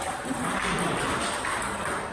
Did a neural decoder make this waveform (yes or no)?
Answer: no